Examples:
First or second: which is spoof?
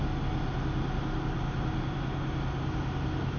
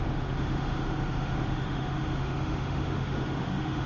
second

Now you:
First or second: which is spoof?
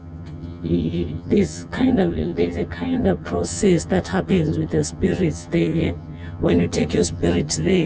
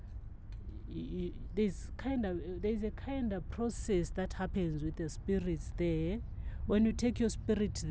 first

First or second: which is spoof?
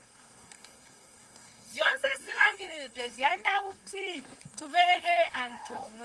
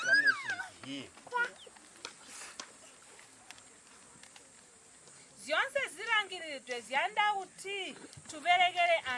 first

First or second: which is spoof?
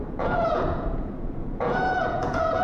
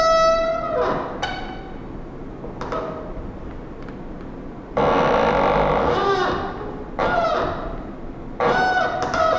first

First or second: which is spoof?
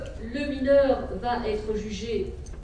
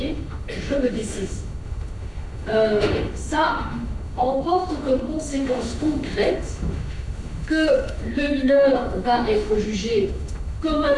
second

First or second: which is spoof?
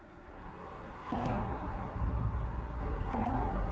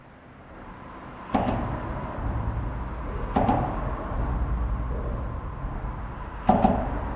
first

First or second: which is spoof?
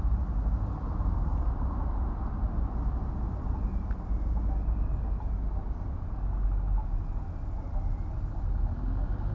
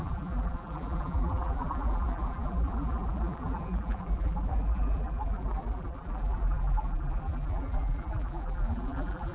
second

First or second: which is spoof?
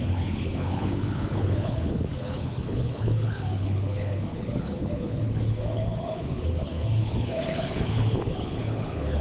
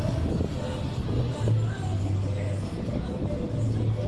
first